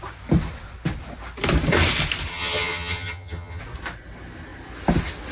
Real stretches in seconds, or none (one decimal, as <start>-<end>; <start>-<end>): 0.0-2.3; 3.6-5.3

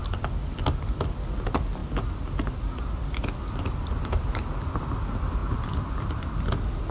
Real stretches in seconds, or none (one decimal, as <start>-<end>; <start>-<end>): 0.0-6.9

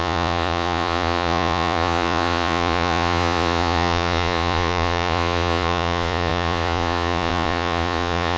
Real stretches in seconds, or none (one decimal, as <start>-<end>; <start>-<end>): none

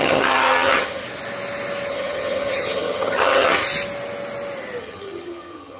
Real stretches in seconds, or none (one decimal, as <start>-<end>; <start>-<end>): 1.0-1.9; 3.6-4.8

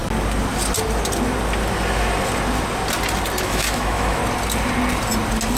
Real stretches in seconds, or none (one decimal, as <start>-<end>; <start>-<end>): 0.0-3.4; 4.2-5.6

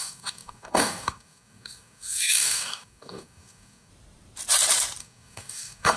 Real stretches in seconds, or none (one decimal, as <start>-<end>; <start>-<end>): 3.9-5.0